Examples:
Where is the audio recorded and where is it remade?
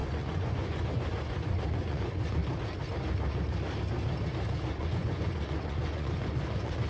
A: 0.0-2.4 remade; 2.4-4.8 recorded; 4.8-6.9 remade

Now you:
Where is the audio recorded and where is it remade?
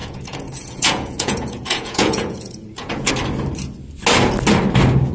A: 0.0-3.1 remade; 3.1-5.1 recorded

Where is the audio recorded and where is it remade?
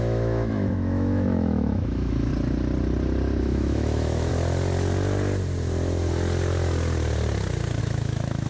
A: 0.0-2.3 remade; 2.3-3.4 recorded; 3.4-4.3 remade; 4.3-7.8 recorded; 7.8-8.5 remade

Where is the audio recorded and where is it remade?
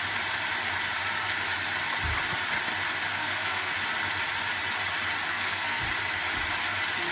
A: 0.0-3.1 recorded; 3.1-3.7 remade; 3.7-5.3 recorded; 5.3-5.8 remade; 5.8-7.1 recorded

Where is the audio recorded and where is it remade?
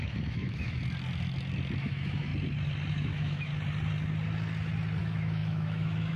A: 0.0-0.8 remade; 0.8-1.8 recorded; 1.8-2.3 remade; 2.3-2.9 recorded; 2.9-3.5 remade; 3.5-5.0 recorded; 5.0-6.2 remade